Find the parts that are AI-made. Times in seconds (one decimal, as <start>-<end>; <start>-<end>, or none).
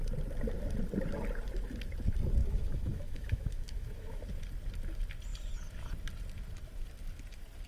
2.4-4.2